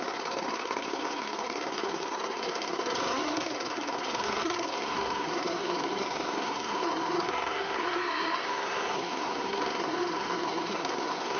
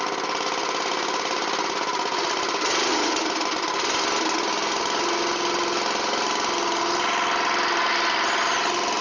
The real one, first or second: second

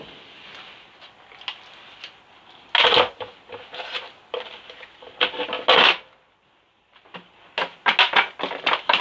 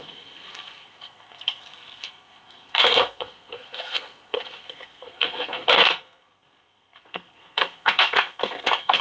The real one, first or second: first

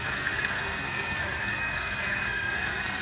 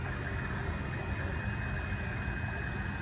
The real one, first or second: second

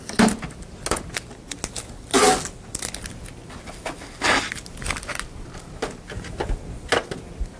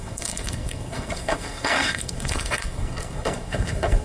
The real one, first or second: first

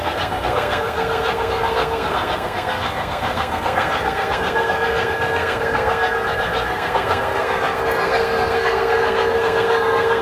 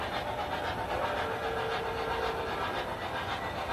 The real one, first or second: second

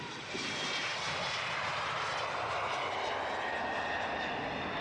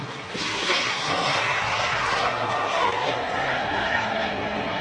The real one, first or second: first